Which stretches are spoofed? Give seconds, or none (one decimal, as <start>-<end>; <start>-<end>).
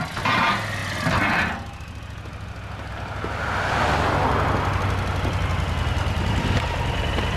none